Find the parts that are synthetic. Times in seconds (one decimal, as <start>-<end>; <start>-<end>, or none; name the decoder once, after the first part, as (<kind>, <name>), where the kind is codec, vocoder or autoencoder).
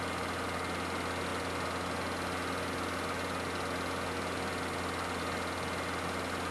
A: none